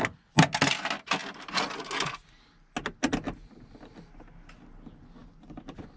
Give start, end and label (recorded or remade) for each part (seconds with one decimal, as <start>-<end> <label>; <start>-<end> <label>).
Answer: 0.0-6.0 recorded